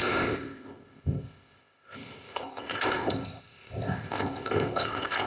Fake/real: fake